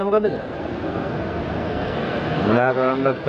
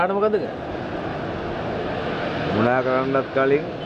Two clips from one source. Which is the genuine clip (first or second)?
second